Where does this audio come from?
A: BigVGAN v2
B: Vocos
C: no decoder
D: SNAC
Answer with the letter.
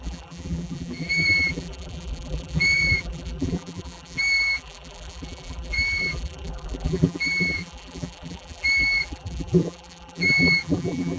A